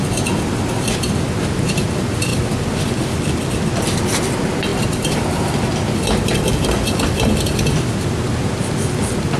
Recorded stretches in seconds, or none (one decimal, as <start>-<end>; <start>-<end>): 0.0-9.4